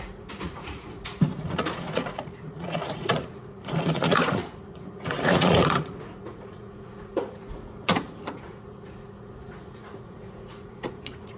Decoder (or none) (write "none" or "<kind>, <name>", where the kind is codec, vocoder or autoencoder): vocoder, Vocos